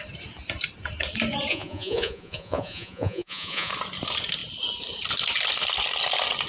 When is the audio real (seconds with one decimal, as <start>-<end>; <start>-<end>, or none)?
0.0-1.5; 3.7-6.5

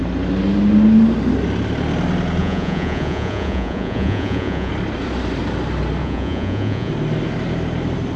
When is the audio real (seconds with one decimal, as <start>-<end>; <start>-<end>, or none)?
0.0-2.4; 4.7-6.0; 6.9-8.2

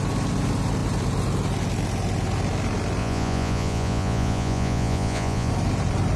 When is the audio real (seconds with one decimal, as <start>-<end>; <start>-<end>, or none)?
0.0-3.0; 5.5-6.2

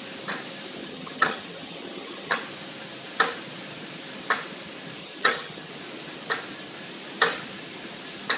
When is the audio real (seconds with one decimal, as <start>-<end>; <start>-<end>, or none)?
0.0-0.8; 2.4-5.0; 5.7-8.4

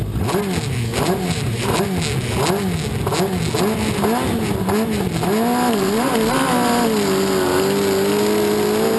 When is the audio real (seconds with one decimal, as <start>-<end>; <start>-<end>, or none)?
0.0-0.9; 1.8-9.0